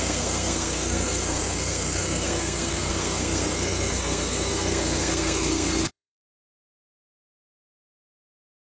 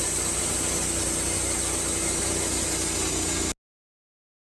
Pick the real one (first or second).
second